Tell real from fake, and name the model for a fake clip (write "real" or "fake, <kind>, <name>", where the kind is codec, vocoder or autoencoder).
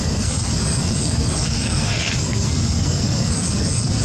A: fake, codec, SNAC